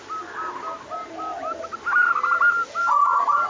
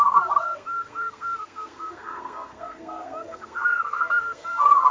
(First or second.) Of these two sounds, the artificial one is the second